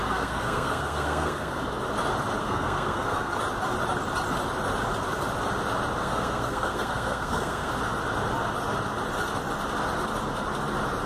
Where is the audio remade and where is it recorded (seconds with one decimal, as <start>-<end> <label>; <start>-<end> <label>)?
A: 0.0-1.6 remade; 1.6-2.4 recorded; 2.4-3.3 remade; 3.3-6.0 recorded; 6.0-7.7 remade; 7.7-11.1 recorded